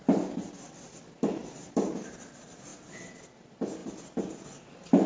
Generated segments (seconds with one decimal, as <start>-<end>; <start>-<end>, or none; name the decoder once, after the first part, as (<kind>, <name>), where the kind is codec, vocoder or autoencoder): none